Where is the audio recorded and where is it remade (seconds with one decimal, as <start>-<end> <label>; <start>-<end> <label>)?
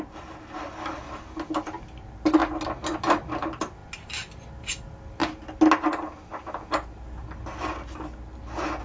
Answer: 0.0-8.8 recorded